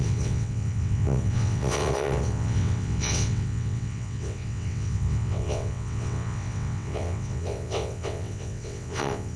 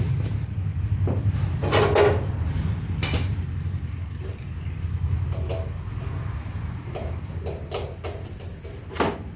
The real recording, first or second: second